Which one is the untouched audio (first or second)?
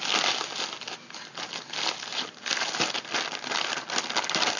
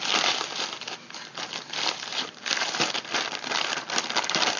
first